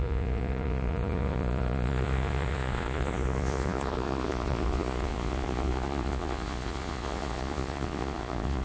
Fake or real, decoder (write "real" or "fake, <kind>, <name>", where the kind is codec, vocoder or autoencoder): fake, vocoder, Vocos